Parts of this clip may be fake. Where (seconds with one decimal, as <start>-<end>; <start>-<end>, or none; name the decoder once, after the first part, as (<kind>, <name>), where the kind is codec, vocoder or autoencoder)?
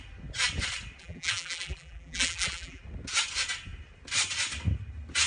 1.0-2.8 (vocoder, BigVGAN v2)